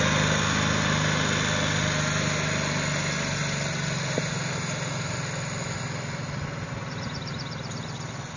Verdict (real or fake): real